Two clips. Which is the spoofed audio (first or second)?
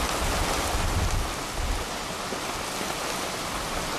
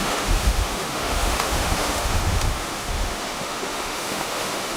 second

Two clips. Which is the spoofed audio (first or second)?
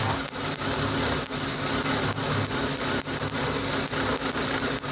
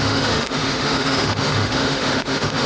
second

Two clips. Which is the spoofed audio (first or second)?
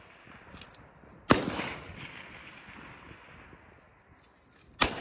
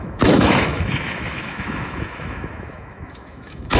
second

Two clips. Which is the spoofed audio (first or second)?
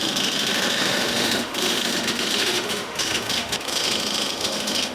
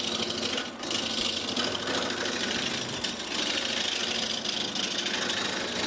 first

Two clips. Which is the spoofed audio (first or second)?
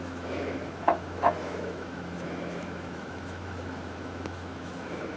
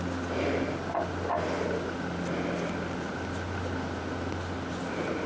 first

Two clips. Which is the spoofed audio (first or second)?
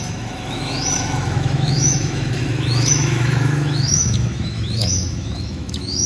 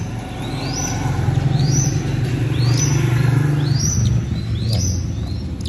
first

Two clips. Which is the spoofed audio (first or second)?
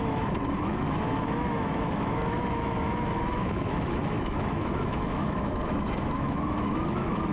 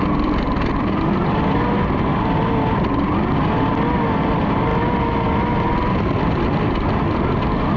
first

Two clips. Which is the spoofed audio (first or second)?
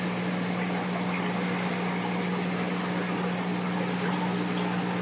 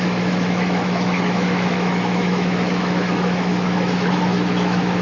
second